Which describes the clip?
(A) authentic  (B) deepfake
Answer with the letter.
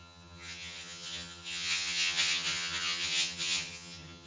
B